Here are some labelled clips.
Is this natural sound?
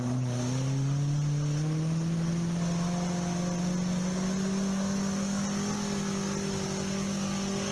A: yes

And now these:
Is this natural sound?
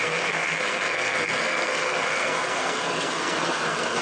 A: no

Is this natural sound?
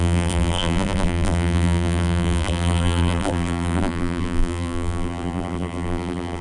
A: no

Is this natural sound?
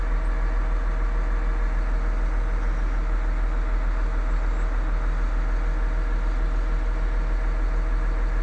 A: yes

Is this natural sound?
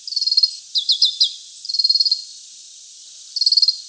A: yes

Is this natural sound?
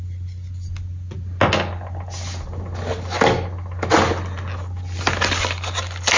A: yes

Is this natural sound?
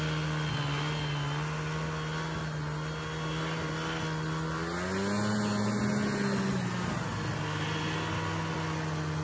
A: yes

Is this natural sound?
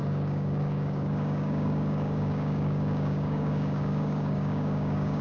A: no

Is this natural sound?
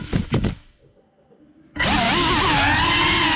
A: yes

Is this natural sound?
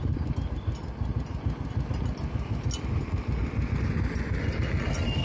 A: yes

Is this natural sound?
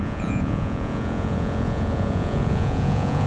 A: no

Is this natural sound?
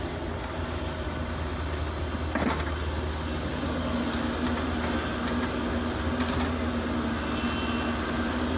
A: yes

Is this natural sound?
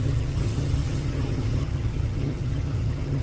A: no